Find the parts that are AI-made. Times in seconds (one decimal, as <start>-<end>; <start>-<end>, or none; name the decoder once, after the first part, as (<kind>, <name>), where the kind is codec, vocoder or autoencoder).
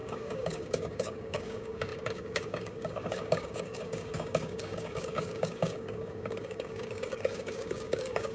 0.0-8.3 (codec, DAC)